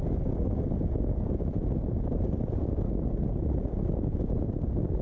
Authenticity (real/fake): real